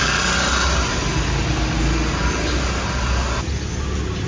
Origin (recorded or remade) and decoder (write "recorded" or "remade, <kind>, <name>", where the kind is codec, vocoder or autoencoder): recorded